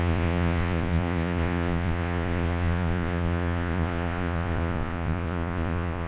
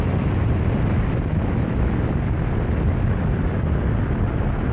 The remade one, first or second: first